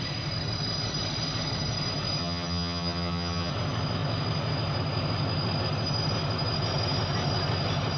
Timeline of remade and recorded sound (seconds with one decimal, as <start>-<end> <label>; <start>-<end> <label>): 0.0-2.2 recorded; 2.2-3.5 remade; 3.5-8.0 recorded